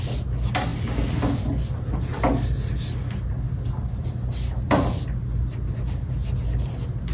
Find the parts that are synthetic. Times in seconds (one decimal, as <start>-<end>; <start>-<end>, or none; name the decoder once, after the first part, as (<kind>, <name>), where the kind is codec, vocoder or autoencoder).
none